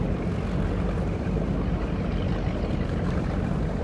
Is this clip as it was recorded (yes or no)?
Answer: yes